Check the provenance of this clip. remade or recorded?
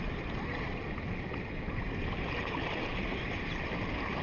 recorded